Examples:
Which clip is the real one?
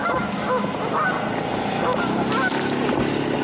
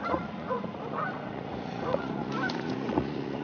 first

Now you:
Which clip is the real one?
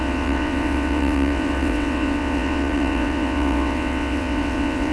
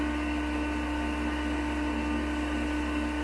second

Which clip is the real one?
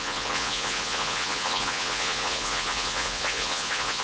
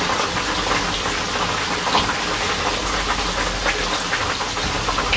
second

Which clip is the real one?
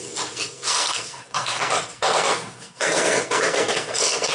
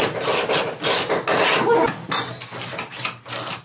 second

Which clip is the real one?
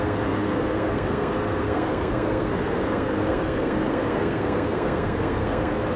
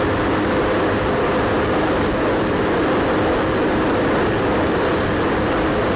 second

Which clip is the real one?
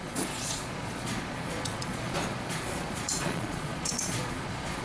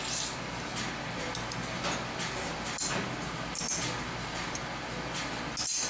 second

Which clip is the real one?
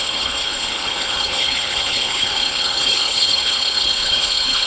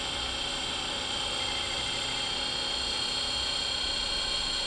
second